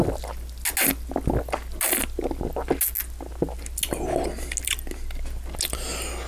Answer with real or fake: real